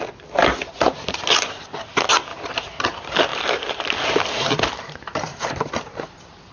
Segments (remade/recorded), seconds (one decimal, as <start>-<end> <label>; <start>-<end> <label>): 0.0-2.3 recorded; 2.3-2.8 remade; 2.8-3.3 recorded; 3.3-4.6 remade; 4.6-5.3 recorded; 5.3-6.0 remade; 6.0-6.5 recorded